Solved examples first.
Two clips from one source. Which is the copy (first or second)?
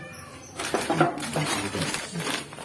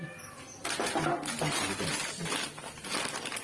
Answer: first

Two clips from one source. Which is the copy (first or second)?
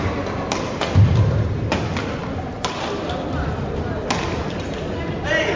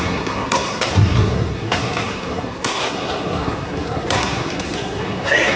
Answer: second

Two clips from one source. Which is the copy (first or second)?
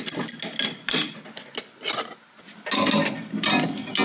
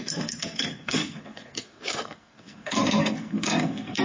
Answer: second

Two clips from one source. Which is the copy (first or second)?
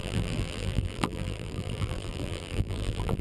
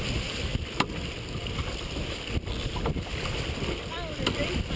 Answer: first